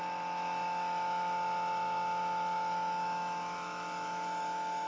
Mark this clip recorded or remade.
remade